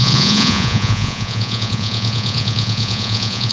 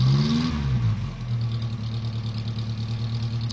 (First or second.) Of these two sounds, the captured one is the second